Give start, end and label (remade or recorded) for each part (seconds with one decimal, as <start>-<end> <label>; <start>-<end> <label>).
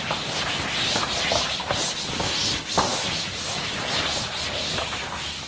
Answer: 0.0-2.9 recorded; 2.9-3.7 remade; 3.7-5.5 recorded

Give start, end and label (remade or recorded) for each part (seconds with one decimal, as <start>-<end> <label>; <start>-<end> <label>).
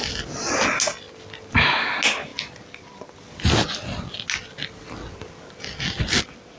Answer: 0.0-6.6 recorded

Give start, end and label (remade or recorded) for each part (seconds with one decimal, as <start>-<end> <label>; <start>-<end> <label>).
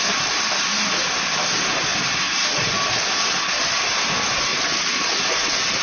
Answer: 0.0-4.5 recorded; 4.5-5.1 remade; 5.1-5.8 recorded